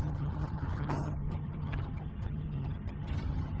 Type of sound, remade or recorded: remade